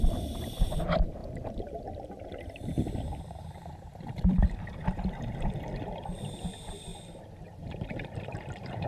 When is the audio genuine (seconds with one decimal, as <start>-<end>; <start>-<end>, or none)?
none